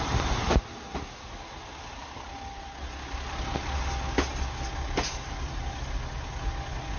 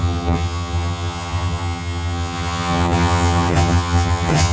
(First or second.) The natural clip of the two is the first